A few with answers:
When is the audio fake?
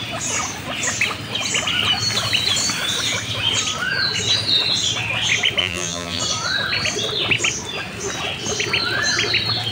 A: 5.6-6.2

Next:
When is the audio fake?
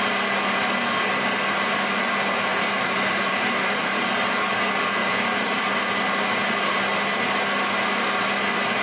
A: 2.5-4.6; 5.0-5.8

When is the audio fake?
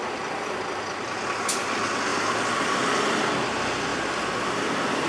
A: 0.0-1.7; 2.1-3.2; 3.9-5.1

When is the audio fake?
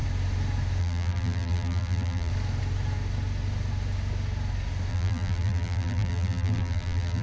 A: 0.8-2.3; 4.9-7.2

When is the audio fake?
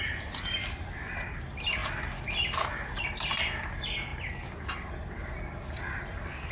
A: none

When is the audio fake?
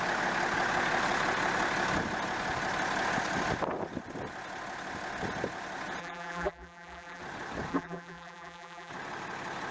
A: 6.0-7.2; 7.7-8.9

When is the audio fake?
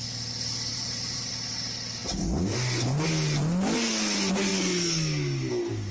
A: 0.7-1.3